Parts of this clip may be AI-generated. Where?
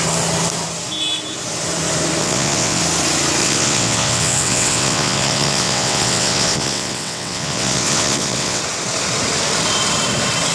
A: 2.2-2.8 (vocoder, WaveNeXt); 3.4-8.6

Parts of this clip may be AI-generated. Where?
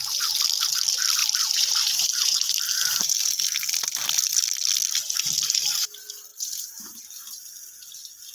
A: 1.2-3.4 (vocoder, BigVGAN v2); 6.3-7.5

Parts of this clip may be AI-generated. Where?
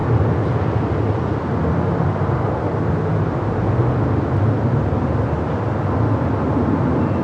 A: none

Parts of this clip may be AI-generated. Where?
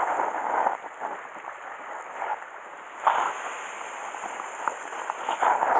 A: none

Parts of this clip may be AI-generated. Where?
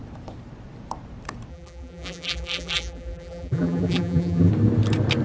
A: 1.5-4.5 (vocoder, BigVGAN v2)